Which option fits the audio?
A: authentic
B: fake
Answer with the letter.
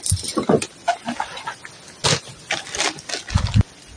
A